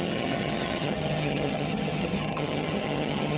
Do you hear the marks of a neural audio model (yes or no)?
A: yes